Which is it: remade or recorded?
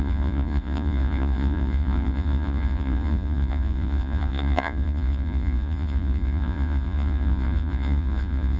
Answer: remade